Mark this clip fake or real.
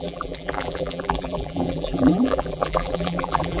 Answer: fake